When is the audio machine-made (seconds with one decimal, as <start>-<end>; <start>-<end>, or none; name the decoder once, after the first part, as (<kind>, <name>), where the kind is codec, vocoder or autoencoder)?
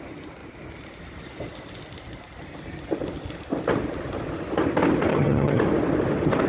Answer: 5.1-5.6 (vocoder, HiFi-GAN)